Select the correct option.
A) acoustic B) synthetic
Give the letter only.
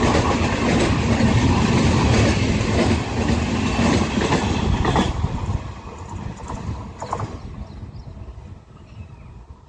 A